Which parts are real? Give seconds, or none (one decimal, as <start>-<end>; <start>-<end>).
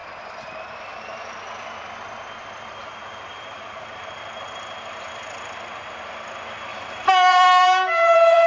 1.4-2.8; 4.1-6.7